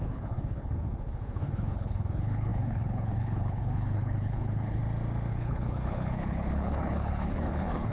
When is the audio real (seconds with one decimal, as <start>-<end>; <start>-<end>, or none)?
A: 4.8-5.3